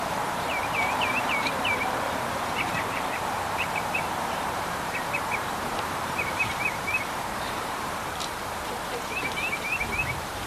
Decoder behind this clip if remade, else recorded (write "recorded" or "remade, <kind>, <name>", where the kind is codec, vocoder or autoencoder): remade, vocoder, BigVGAN v2